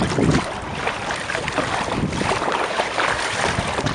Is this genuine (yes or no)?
no